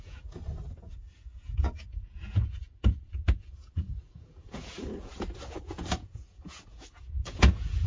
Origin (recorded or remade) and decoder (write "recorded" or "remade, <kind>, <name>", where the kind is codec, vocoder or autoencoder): remade, vocoder, Vocos